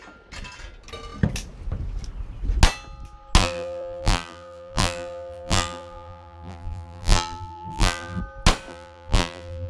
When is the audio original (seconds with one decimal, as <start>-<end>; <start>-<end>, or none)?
0.0-3.4; 8.2-8.7